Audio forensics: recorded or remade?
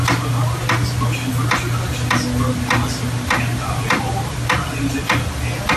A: recorded